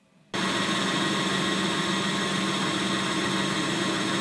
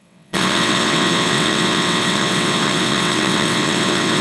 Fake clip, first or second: second